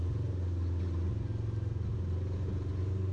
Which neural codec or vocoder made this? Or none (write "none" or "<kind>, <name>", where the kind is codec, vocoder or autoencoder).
none